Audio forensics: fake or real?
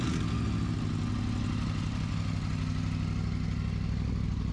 real